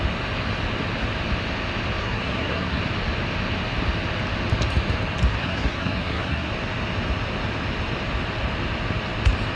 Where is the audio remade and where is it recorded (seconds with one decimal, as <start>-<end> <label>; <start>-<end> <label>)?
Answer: 0.0-2.0 recorded; 2.0-2.8 remade; 2.8-5.3 recorded; 5.3-6.5 remade; 6.5-9.6 recorded